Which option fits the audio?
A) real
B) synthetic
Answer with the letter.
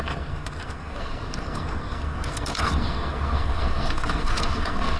B